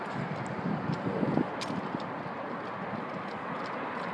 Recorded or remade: recorded